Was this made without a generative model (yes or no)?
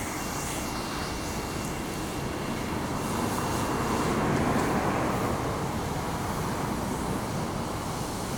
yes